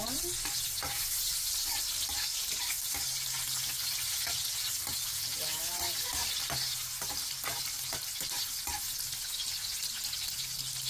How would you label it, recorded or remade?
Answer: recorded